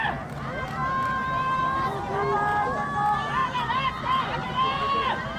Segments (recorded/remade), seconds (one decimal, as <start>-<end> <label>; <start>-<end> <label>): 0.0-5.4 recorded

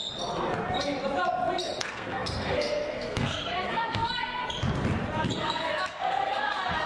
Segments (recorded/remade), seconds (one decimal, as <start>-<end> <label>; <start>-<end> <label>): 0.0-1.8 recorded; 1.8-4.4 remade; 4.4-5.4 recorded; 5.4-6.9 remade

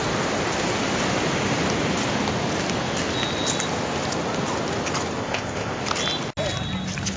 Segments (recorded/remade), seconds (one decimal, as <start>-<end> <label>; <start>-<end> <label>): 0.0-5.2 recorded; 5.2-5.8 remade; 5.8-7.2 recorded

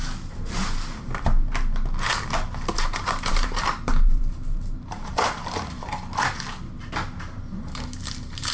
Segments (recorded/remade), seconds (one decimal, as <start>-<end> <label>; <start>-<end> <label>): 0.0-3.0 recorded; 3.0-5.9 remade; 5.9-8.5 recorded

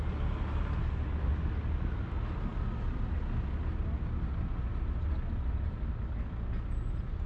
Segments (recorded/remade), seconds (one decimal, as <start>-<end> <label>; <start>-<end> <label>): 0.0-7.3 recorded